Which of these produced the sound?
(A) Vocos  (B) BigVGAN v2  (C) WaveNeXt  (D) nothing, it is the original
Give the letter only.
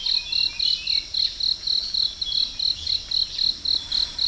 D